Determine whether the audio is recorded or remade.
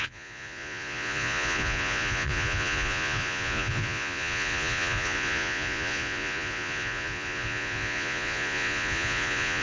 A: remade